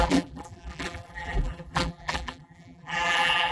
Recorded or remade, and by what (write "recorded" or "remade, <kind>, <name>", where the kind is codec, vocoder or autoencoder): remade, vocoder, BigVGAN v2